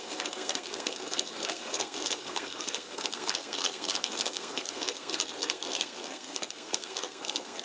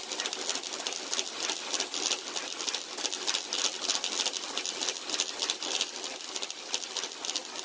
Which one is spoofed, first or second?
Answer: first